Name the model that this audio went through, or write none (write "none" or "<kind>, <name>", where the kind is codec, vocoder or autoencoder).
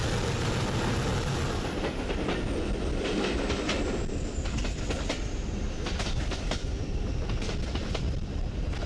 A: none